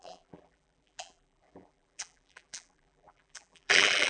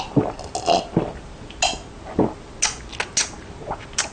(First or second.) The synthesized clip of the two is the first